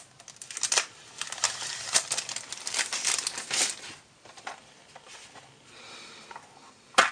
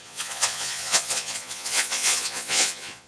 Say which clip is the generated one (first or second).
second